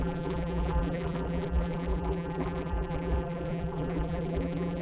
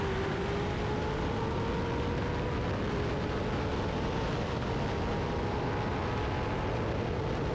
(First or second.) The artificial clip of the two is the first